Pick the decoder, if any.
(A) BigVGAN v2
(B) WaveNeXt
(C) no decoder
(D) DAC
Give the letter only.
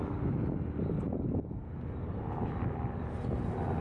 C